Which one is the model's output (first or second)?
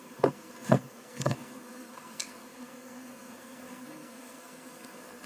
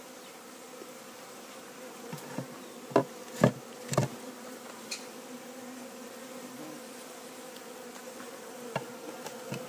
first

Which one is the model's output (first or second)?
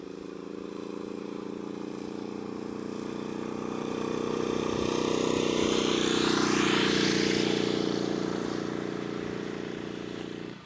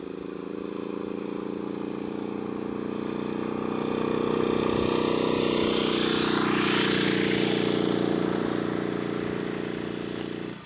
first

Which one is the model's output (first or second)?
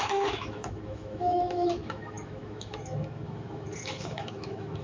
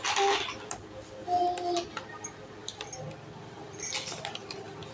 first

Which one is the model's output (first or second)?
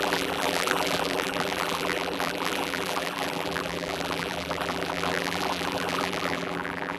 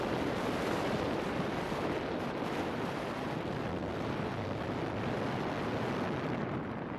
first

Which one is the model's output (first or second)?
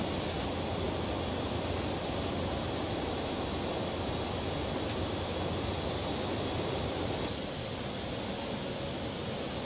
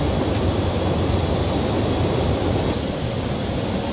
second